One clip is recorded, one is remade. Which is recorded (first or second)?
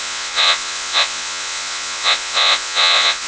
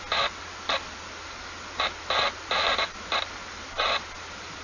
second